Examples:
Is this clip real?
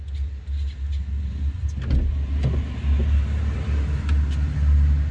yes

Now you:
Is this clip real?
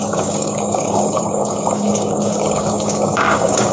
no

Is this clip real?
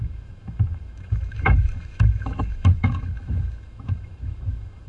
no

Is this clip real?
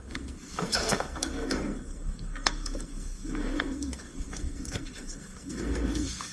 no